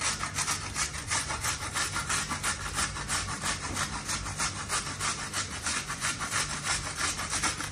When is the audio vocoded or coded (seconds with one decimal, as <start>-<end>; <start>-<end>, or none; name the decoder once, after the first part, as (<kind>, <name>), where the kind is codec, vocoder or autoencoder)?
1.0-1.7 (vocoder, Vocos); 5.7-6.3